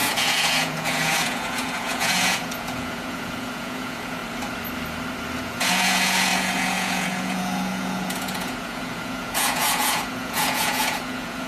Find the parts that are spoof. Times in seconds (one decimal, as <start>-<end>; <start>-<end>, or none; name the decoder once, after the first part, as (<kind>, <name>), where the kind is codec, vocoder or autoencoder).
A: 0.0-4.2 (vocoder, Vocos); 5.4-11.5